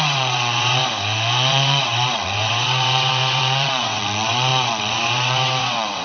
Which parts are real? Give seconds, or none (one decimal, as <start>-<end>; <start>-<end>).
0.8-1.5